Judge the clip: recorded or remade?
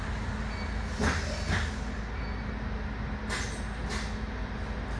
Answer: recorded